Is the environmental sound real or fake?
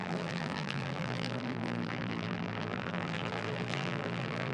fake